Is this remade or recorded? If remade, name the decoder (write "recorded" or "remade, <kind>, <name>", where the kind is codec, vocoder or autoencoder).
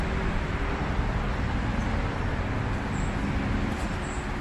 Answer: recorded